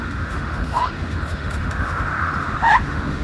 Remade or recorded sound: remade